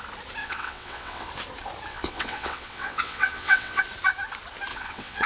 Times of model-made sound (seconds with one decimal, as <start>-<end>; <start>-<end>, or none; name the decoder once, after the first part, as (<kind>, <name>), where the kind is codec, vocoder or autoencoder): 0.4-1.3 (vocoder, WaveNeXt); 1.9-3.8; 4.7-5.3